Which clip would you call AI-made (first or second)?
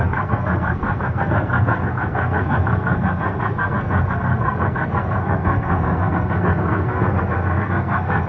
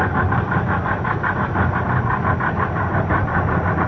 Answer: first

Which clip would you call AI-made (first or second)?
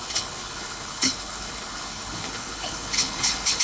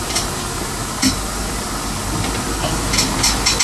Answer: first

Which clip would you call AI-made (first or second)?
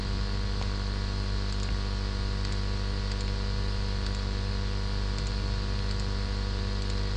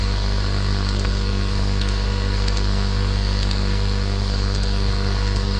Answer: second